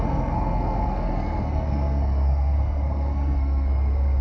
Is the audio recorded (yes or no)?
no